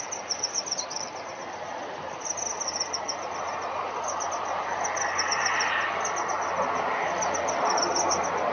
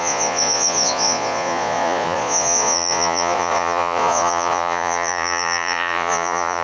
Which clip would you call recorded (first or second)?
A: first